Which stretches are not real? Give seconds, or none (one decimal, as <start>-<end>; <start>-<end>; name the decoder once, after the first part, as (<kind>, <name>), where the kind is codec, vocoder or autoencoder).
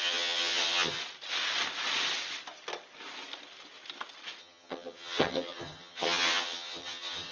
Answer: 0.0-1.0 (vocoder, HiFi-GAN); 4.4-7.3